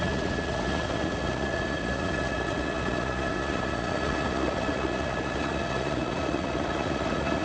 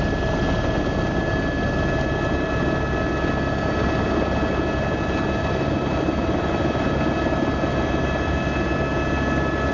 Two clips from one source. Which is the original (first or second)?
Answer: second